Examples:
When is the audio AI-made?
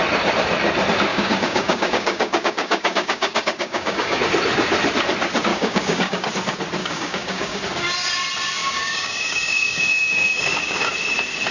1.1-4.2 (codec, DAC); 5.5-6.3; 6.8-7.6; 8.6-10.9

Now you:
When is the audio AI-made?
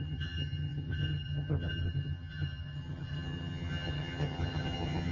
0.0-5.1 (vocoder, HiFi-GAN)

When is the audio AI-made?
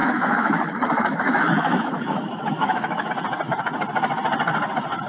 0.0-3.1 (autoencoder, DAC-VAE)